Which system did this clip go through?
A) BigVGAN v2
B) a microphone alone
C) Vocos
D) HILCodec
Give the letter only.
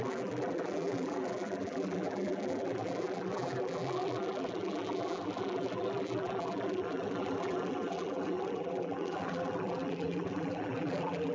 A